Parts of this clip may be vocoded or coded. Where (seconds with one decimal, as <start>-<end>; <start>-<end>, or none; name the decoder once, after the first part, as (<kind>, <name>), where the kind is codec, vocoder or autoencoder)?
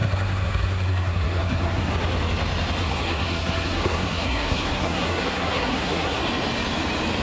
0.0-1.9 (codec, SNAC); 2.8-6.2